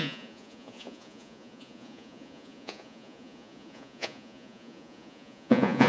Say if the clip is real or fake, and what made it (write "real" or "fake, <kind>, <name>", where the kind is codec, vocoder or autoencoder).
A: fake, vocoder, Vocos